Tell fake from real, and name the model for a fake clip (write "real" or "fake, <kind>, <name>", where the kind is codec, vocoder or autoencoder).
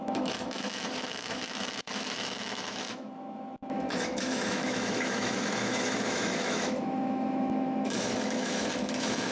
fake, autoencoder, DAC-VAE